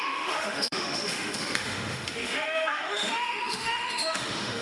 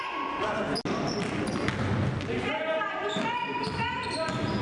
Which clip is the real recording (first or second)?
second